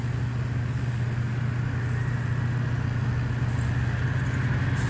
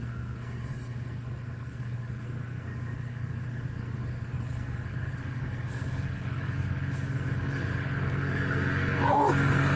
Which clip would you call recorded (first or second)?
first